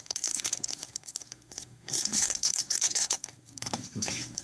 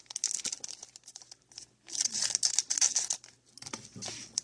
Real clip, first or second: second